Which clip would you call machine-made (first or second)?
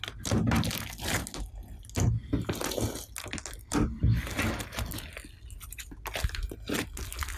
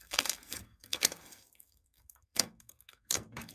second